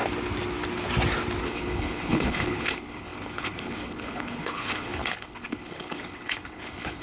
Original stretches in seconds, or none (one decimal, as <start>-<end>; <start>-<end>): 0.0-1.4